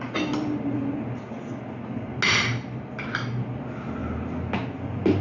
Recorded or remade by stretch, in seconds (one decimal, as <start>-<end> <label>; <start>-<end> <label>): 0.0-5.2 recorded